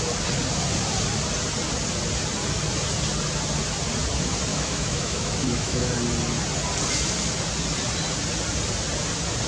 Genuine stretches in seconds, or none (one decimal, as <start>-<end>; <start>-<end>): 0.0-4.5; 5.9-9.5